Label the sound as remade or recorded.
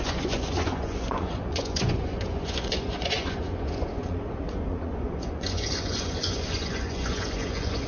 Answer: remade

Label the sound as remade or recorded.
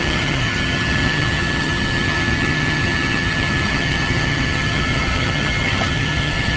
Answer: remade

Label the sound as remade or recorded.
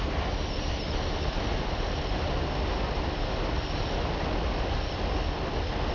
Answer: recorded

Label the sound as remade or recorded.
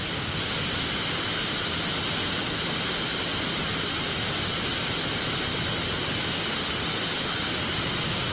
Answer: recorded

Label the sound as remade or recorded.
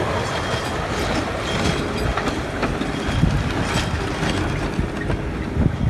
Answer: recorded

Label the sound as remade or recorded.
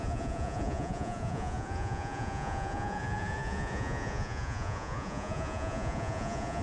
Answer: remade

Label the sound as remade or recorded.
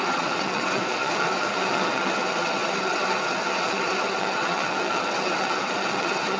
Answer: remade